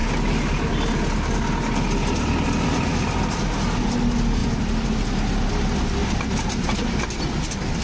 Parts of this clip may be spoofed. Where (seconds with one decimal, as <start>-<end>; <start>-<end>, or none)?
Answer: none